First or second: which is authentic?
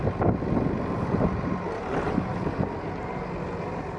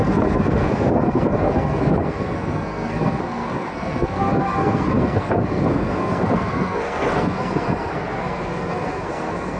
first